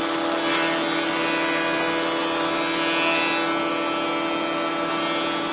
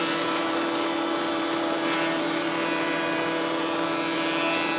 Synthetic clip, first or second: second